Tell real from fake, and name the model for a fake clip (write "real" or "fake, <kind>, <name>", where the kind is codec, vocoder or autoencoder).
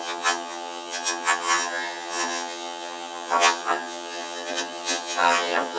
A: fake, vocoder, HiFi-GAN